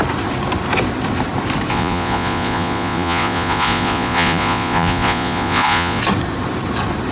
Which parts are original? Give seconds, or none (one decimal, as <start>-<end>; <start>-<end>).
0.0-1.7; 6.0-7.1